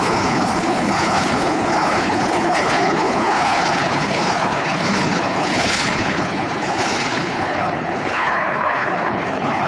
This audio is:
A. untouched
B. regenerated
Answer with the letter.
B